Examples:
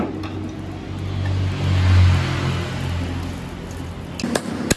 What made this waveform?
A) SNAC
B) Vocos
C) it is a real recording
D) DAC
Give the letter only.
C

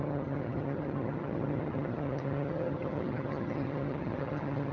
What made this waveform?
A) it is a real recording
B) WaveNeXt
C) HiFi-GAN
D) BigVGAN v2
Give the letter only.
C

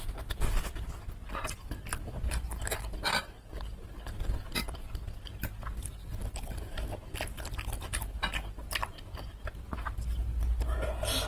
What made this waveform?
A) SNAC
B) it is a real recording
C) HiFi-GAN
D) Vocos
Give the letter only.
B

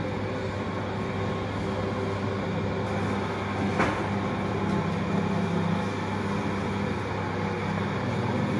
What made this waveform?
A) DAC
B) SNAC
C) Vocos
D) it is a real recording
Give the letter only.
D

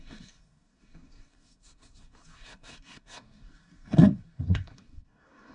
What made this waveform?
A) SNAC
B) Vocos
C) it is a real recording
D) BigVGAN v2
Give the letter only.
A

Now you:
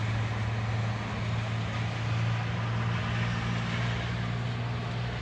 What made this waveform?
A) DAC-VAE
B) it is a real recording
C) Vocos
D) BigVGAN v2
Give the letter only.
D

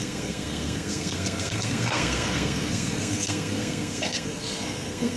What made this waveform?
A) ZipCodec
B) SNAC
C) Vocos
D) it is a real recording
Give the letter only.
B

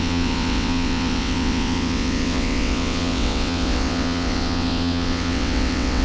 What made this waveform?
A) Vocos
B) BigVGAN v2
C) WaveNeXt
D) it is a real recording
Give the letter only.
C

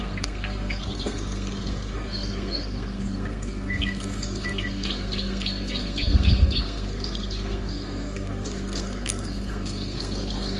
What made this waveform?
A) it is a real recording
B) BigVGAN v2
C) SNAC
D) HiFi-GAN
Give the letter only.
C